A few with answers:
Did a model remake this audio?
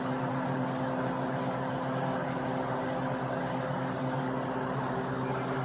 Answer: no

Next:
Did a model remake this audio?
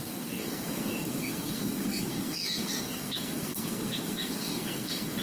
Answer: yes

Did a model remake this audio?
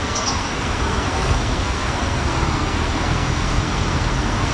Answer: yes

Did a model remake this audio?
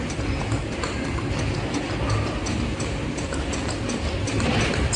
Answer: no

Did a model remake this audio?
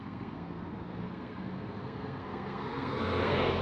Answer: yes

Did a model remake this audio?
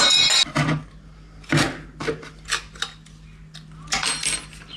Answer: no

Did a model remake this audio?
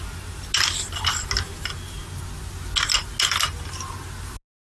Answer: no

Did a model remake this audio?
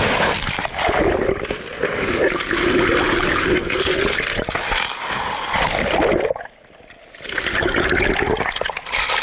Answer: no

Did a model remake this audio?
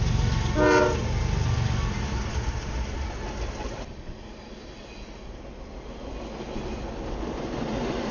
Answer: no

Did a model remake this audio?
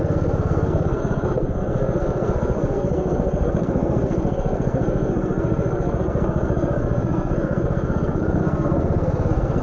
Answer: yes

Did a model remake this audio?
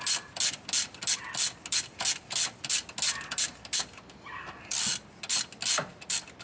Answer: no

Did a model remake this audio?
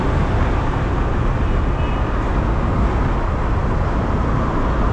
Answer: no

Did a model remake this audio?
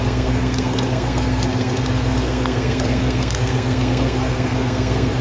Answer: yes